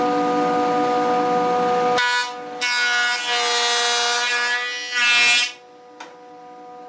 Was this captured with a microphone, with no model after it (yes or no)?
yes